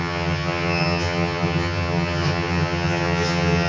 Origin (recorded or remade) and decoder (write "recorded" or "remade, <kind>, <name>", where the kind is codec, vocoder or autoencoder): remade, vocoder, HiFi-GAN